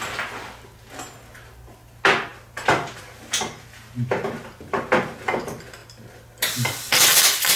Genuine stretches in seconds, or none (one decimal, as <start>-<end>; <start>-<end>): 0.0-7.6